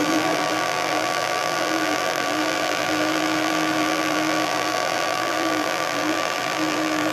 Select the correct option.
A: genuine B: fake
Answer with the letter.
B